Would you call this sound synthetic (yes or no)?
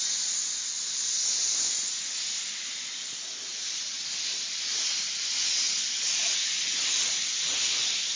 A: no